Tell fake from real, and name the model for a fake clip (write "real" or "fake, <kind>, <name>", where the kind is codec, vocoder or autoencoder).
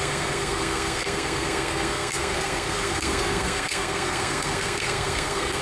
fake, codec, SNAC